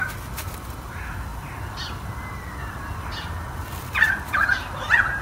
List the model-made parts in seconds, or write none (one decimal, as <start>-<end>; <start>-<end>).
none